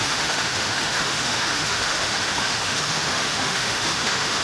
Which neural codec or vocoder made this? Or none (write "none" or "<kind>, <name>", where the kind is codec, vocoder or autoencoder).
autoencoder, DAC-VAE